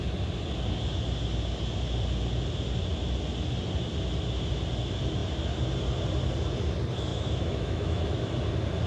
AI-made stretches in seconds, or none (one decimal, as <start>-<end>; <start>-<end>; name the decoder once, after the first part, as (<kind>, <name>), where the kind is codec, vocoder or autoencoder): 7.1-8.3 (autoencoder, DAC-VAE)

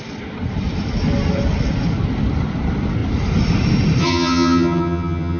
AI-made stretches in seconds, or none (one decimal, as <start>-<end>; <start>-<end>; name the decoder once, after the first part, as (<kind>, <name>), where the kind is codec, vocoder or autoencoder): 4.0-5.4 (vocoder, HiFi-GAN)

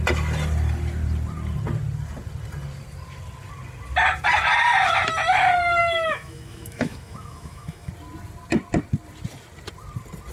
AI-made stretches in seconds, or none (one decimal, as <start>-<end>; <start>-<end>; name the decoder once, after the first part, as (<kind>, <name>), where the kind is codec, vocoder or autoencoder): 5.8-7.9 (autoencoder, DAC-VAE)

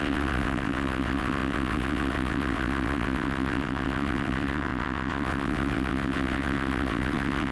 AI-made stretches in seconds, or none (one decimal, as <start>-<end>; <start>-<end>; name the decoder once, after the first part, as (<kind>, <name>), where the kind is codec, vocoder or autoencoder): 0.0-7.5 (vocoder, WaveNeXt)

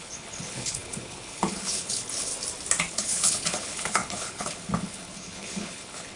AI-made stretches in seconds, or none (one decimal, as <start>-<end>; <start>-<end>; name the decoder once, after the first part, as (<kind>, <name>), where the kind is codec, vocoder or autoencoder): 0.0-2.3 (codec, HILCodec); 2.9-6.2

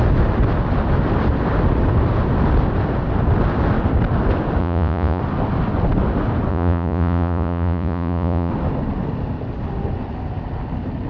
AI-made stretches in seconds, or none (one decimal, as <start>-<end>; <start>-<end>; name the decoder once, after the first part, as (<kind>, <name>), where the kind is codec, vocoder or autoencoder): 4.6-5.2 (vocoder, Vocos); 6.5-8.5

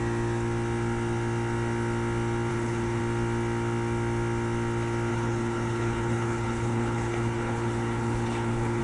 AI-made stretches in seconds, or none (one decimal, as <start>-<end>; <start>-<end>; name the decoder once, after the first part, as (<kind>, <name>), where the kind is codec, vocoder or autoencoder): 2.5-3.0 (codec, HILCodec); 5.1-8.8